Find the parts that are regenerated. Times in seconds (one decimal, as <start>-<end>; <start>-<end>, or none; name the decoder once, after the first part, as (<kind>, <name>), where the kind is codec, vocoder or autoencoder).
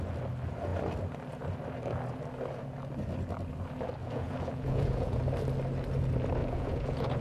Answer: 4.0-5.2 (vocoder, Vocos); 6.4-7.2